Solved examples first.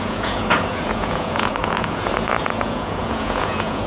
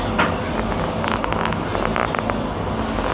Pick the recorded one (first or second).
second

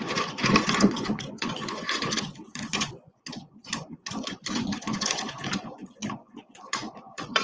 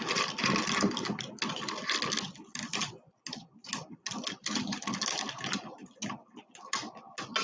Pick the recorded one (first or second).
second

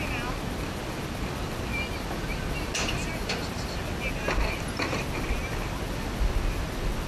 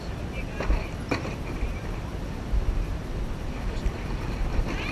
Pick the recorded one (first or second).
first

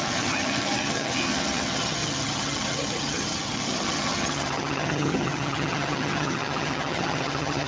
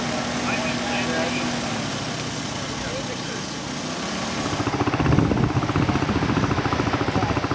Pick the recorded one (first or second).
second